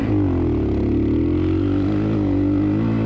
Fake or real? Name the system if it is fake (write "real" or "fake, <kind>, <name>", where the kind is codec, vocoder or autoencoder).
real